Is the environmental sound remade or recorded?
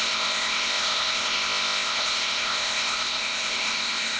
remade